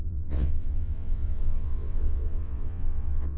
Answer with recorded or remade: remade